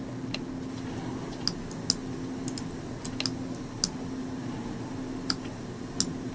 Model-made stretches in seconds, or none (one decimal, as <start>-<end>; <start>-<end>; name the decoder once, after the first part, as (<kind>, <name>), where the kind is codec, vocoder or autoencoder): none